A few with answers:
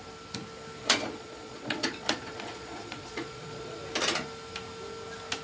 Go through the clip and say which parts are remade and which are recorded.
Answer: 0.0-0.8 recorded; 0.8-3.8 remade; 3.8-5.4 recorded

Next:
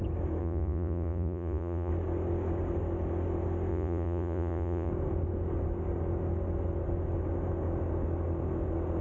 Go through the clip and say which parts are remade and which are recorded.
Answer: 0.0-0.4 recorded; 0.4-1.9 remade; 1.9-3.7 recorded; 3.7-4.9 remade; 4.9-9.0 recorded

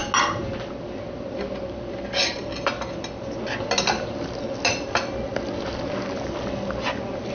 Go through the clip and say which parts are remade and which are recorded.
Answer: 0.0-7.3 recorded

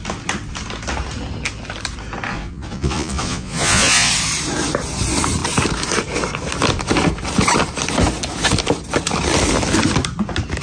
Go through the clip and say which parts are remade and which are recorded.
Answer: 0.0-2.3 recorded; 2.3-4.1 remade; 4.1-10.6 recorded

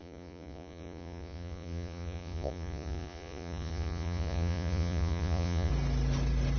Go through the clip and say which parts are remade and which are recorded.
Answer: 0.0-5.7 remade; 5.7-6.6 recorded

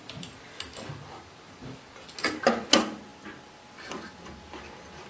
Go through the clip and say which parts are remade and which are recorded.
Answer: 0.0-5.1 recorded

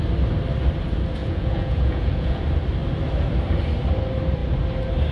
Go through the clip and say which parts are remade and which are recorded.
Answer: 0.0-1.2 recorded; 1.2-2.4 remade; 2.4-5.1 recorded

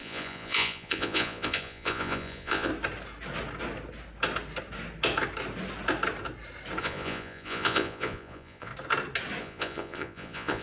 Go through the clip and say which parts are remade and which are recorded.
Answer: 0.0-2.7 remade; 2.7-6.8 recorded; 6.8-8.7 remade; 8.7-9.4 recorded; 9.4-10.6 remade